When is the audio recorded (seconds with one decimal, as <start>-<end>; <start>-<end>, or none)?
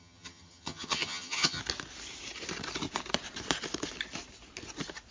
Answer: 1.6-5.1